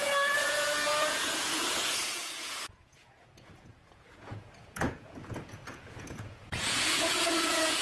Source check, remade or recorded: remade